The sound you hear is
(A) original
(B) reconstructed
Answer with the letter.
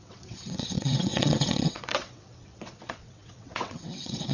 B